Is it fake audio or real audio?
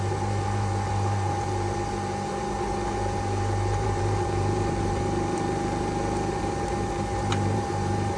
fake